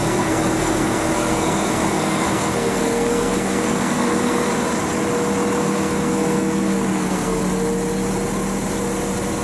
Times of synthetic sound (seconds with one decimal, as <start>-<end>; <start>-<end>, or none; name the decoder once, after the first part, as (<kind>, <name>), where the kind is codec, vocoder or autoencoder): 0.0-4.5 (codec, SNAC); 5.6-7.4